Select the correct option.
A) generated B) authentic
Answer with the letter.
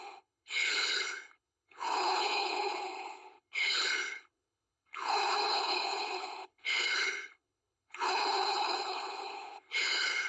A